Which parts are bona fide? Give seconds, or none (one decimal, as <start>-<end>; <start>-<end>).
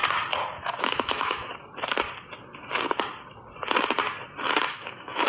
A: 0.0-0.8; 1.5-4.7